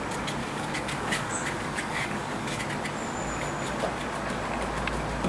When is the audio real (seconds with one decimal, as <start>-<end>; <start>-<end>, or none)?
0.0-0.4; 2.6-5.3